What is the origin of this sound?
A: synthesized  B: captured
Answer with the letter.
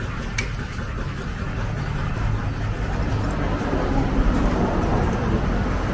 B